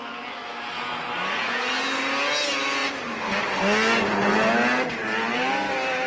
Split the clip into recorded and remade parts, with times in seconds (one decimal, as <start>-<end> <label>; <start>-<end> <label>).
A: 0.0-5.0 recorded; 5.0-6.1 remade